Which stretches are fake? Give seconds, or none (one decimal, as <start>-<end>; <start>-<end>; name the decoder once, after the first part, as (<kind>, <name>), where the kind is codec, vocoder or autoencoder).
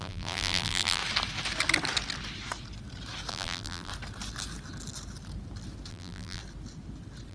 0.0-1.0 (vocoder, BigVGAN v2); 3.3-3.9; 5.9-6.4